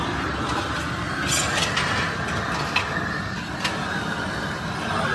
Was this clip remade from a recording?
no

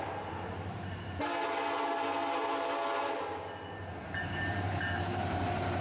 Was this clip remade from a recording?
yes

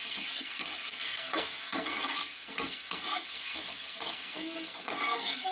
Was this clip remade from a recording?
yes